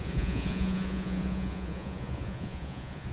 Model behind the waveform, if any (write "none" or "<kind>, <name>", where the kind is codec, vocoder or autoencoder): vocoder, Vocos